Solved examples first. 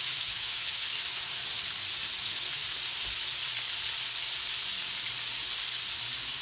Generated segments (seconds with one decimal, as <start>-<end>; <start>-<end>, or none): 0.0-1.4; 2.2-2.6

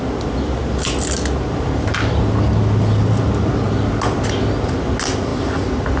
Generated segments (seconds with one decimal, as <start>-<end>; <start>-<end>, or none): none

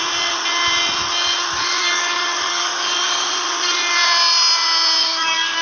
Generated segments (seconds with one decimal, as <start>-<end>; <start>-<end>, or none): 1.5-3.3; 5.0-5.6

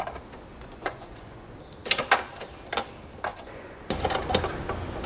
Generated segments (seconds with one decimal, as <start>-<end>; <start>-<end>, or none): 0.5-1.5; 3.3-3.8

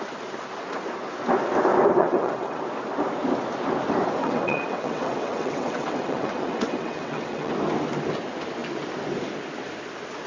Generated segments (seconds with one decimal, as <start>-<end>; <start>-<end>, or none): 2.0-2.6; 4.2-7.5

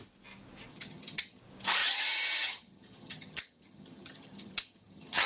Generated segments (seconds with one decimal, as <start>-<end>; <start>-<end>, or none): 0.7-1.4; 1.8-5.3

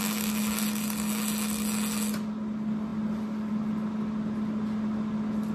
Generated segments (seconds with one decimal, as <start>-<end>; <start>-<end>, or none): none